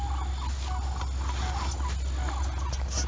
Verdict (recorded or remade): recorded